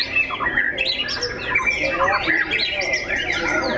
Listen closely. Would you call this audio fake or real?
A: real